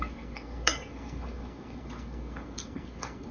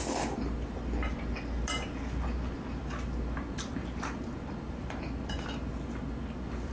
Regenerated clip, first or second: first